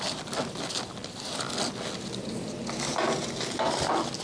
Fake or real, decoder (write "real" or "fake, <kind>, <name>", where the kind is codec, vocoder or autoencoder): real